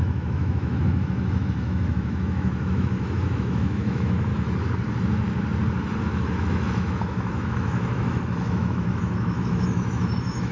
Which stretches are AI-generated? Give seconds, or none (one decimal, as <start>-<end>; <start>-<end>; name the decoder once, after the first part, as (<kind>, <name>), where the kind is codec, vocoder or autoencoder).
0.0-4.3 (autoencoder, DAC-VAE); 6.0-10.5